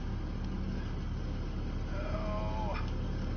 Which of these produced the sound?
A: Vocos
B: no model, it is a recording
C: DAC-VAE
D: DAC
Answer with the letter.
B